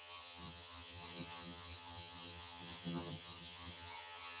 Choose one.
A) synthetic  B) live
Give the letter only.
A